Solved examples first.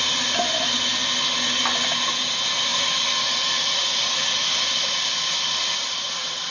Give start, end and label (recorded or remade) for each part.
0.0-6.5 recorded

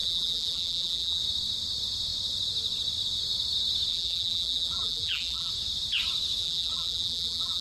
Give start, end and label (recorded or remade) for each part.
0.0-1.2 remade; 1.2-3.9 recorded; 3.9-5.5 remade; 5.5-6.4 recorded; 6.4-7.6 remade

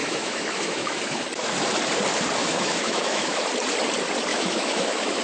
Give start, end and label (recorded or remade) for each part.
0.0-1.2 remade; 1.2-2.4 recorded; 2.4-3.4 remade; 3.4-4.3 recorded; 4.3-5.2 remade

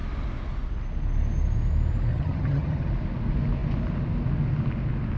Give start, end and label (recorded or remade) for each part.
0.0-2.1 recorded; 2.1-2.9 remade; 2.9-5.2 recorded

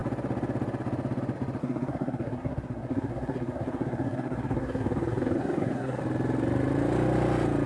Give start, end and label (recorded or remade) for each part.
0.0-1.6 recorded; 1.6-6.0 remade; 6.0-7.7 recorded

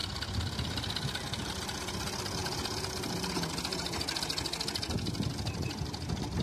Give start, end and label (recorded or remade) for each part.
0.0-6.4 recorded